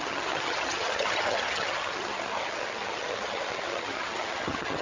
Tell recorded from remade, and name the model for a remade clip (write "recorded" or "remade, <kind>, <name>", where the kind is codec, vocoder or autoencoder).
remade, vocoder, HiFi-GAN